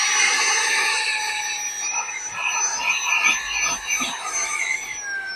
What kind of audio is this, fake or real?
real